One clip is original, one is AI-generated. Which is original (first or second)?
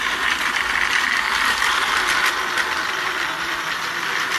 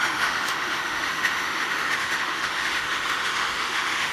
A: first